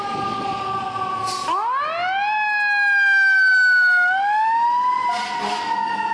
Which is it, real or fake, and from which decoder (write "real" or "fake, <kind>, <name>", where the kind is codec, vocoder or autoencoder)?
real